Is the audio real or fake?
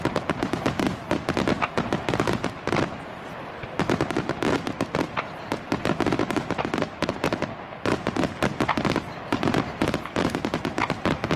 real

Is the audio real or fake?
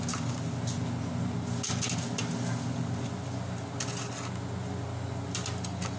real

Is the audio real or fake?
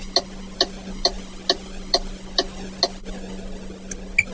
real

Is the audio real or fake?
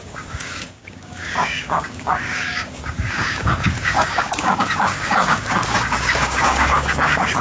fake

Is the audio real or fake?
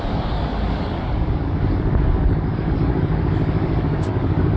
fake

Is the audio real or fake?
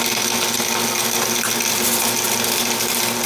real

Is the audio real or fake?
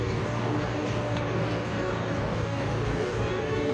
fake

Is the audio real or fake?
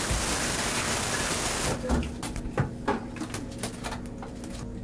real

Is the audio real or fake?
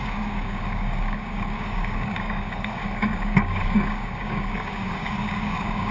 fake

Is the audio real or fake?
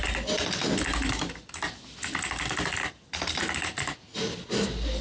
real